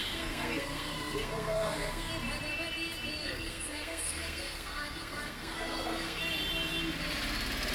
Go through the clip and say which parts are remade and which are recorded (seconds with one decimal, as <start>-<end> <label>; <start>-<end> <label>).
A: 0.0-2.1 remade; 2.1-3.2 recorded; 3.2-6.2 remade; 6.2-7.7 recorded